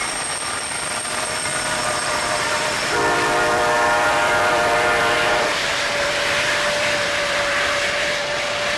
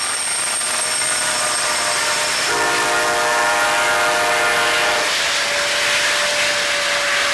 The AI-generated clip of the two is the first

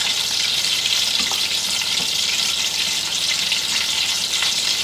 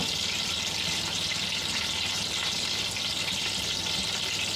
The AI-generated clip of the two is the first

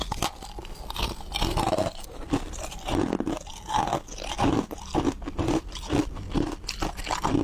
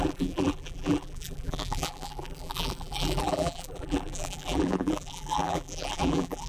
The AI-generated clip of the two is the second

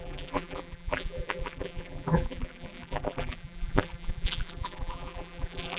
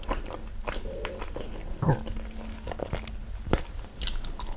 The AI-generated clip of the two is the first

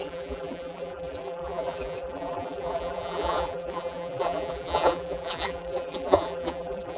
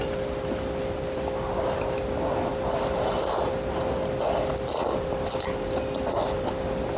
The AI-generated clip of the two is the first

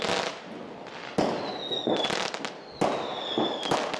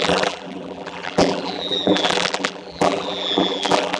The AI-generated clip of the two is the second